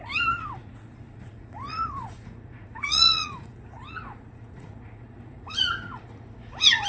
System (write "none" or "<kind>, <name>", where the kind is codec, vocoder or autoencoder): vocoder, Vocos